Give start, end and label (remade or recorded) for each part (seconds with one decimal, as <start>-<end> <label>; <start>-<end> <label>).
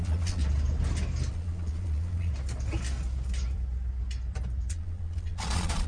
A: 0.0-0.4 remade; 0.4-1.3 recorded; 1.3-2.3 remade; 2.3-4.7 recorded; 4.7-5.9 remade